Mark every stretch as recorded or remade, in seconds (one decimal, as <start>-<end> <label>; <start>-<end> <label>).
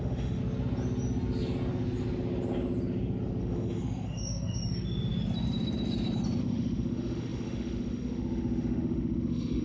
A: 0.0-0.4 remade; 0.4-3.4 recorded; 3.4-4.6 remade; 4.6-6.4 recorded; 6.4-9.6 remade